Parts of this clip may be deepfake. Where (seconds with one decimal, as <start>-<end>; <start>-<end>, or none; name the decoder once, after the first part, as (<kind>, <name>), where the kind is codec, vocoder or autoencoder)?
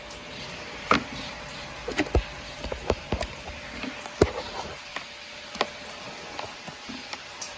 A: 0.0-1.8 (vocoder, BigVGAN v2); 4.5-4.9; 6.4-7.6